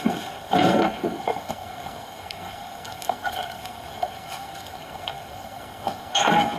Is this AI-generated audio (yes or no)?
yes